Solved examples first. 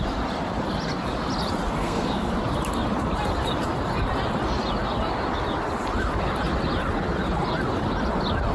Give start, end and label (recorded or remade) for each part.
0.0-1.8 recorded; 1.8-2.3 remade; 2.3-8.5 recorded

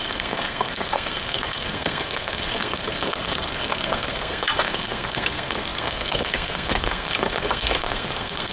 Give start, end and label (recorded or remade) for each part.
0.0-8.5 remade

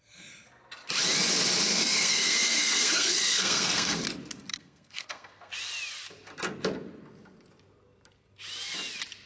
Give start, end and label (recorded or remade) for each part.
0.0-1.7 recorded; 1.7-4.0 remade; 4.0-4.5 recorded; 4.5-5.5 remade; 5.5-9.3 recorded

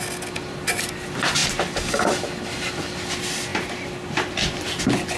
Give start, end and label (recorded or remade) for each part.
0.0-5.2 recorded

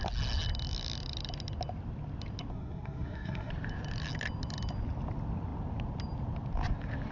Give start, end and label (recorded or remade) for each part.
0.0-2.5 recorded; 2.5-3.5 remade; 3.5-7.1 recorded

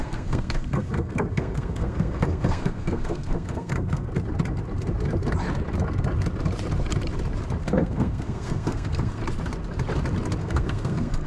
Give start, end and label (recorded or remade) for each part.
0.0-4.1 remade; 4.1-7.6 recorded; 7.6-9.2 remade; 9.2-10.4 recorded; 10.4-11.3 remade